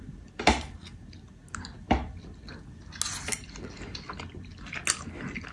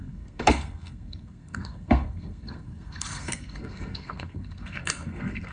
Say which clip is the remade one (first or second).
second